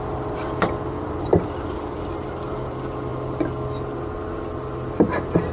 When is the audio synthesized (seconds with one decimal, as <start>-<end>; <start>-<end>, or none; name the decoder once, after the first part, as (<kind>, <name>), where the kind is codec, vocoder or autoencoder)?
none